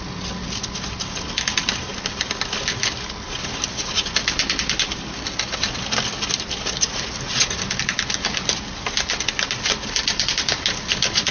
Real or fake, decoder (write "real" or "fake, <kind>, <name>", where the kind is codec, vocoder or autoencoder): real